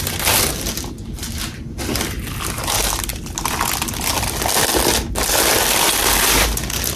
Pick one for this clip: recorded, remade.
recorded